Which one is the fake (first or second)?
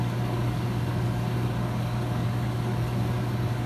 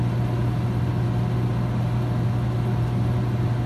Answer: first